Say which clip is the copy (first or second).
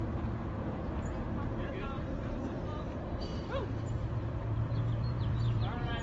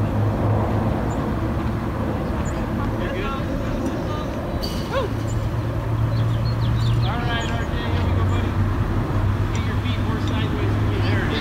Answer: first